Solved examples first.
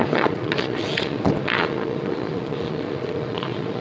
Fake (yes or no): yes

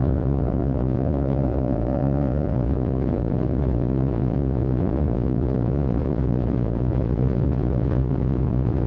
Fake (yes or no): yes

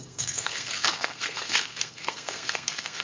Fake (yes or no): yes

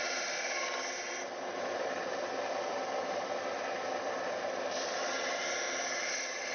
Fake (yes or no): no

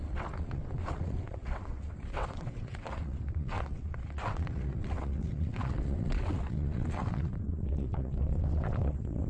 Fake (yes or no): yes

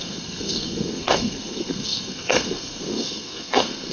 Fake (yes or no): yes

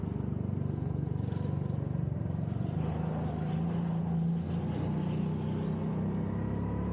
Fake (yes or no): no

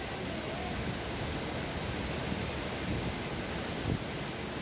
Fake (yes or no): no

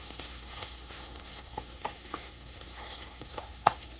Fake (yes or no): yes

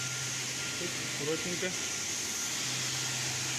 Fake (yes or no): no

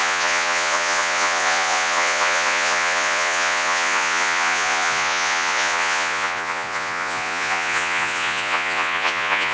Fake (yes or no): yes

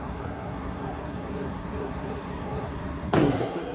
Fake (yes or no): yes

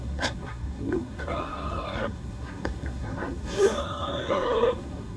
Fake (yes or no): yes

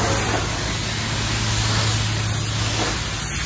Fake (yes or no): no